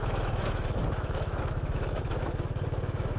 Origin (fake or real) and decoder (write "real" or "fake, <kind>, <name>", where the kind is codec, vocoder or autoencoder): fake, autoencoder, DAC-VAE